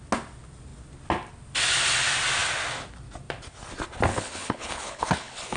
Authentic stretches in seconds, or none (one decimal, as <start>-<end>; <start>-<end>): 0.0-4.1